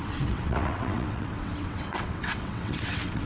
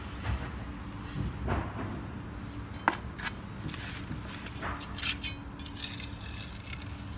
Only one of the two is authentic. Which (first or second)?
second